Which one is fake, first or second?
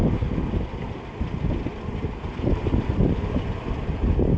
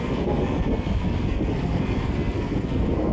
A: second